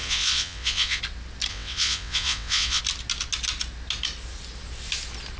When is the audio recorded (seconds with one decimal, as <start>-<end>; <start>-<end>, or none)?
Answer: 1.0-1.5; 2.8-5.4